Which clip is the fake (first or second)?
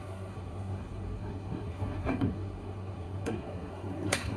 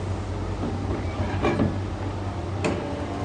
first